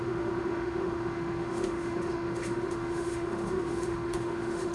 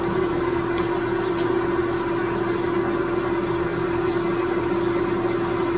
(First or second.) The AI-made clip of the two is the first